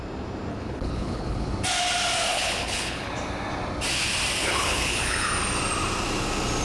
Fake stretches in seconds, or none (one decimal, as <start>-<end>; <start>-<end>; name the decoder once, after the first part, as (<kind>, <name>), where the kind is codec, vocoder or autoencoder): 0.5-1.5 (codec, HILCodec); 2.3-3.1; 4.4-5.3